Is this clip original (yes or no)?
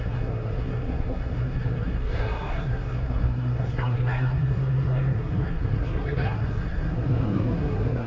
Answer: no